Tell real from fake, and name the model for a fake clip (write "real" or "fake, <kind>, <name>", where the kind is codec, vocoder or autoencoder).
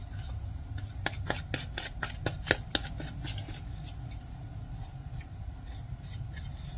real